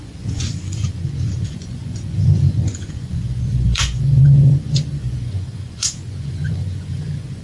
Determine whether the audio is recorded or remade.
remade